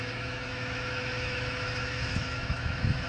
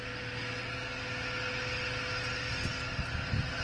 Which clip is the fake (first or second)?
first